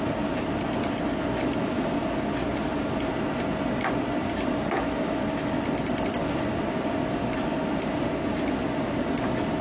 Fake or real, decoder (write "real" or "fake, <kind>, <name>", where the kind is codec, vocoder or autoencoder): real